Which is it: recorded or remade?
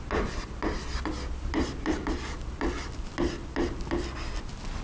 recorded